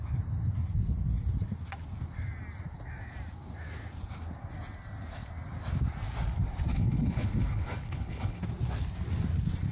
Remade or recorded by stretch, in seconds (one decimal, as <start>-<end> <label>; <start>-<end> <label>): 0.0-6.7 recorded; 6.7-8.4 remade; 8.4-9.7 recorded